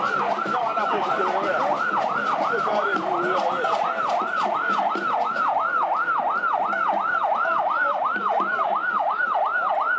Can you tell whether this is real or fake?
fake